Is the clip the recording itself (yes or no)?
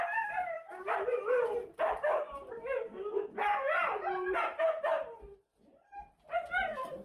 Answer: no